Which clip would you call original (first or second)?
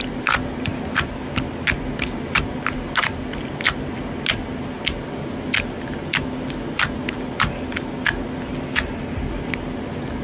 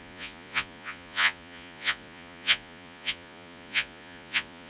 first